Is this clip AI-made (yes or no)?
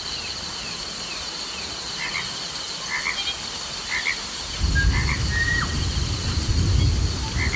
no